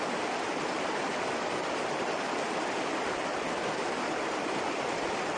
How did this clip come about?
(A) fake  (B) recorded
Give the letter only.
A